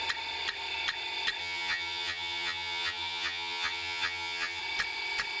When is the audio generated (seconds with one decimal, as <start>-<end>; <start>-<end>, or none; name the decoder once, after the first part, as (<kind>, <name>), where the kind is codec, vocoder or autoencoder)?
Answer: 1.4-4.6 (vocoder, HiFi-GAN)